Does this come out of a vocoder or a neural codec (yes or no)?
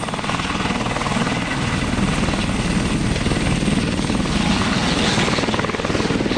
no